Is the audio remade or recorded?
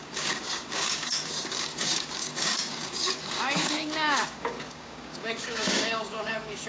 remade